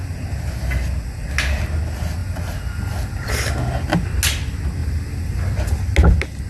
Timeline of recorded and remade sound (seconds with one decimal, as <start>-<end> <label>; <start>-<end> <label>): 0.0-2.2 recorded; 2.2-3.5 remade; 3.5-4.8 recorded; 4.8-5.3 remade; 5.3-6.5 recorded